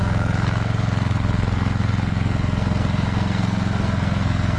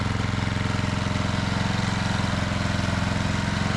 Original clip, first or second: second